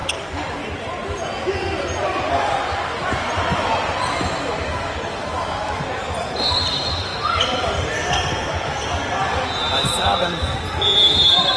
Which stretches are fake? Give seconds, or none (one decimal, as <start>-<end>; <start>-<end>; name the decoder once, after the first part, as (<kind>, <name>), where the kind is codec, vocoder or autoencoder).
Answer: 5.2-5.8 (autoencoder, DAC-VAE)